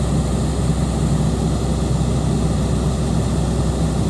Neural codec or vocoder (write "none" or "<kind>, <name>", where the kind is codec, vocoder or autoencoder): none